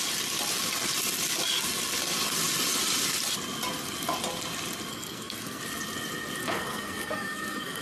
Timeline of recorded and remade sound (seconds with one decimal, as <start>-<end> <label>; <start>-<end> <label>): 0.0-4.9 recorded; 4.9-5.6 remade; 5.6-6.4 recorded; 6.4-7.8 remade